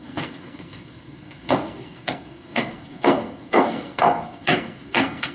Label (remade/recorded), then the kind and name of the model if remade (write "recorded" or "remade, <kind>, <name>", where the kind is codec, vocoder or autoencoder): remade, codec, SNAC